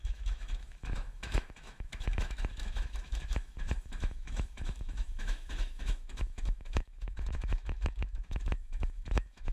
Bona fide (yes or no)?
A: no